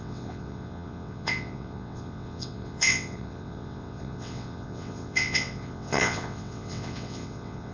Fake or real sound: fake